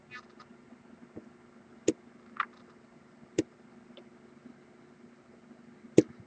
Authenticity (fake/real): real